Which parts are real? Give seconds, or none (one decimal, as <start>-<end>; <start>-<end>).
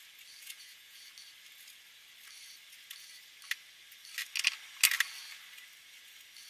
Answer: 0.0-0.4; 1.0-6.5